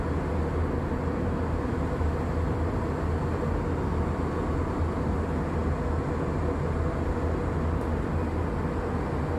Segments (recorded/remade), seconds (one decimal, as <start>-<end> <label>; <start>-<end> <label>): 0.0-9.4 recorded